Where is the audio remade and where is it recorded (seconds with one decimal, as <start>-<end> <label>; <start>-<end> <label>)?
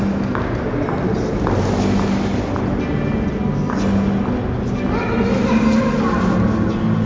0.0-7.1 recorded